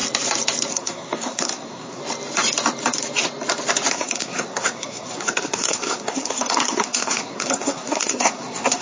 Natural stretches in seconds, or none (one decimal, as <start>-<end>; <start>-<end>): 0.0-0.7; 2.0-3.9

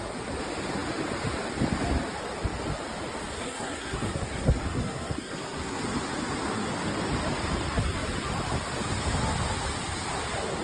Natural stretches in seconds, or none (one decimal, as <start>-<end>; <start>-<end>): 0.0-3.4; 5.8-10.6

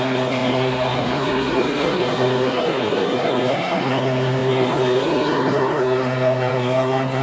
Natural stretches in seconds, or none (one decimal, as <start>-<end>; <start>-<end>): none

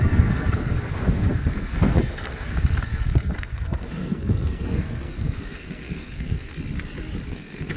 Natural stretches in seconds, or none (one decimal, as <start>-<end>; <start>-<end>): 6.5-7.3

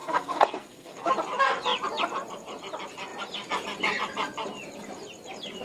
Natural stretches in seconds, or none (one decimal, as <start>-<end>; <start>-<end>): 1.1-5.6